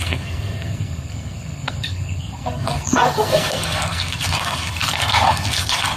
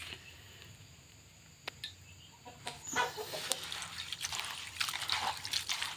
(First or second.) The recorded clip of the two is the second